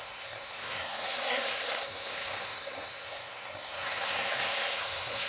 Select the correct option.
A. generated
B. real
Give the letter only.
A